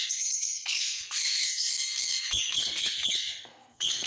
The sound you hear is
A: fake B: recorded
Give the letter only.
A